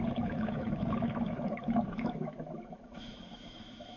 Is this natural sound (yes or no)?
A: no